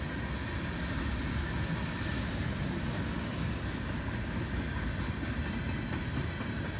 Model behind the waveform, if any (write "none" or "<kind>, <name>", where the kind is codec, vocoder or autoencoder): none